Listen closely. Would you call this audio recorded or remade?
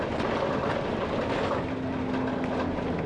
recorded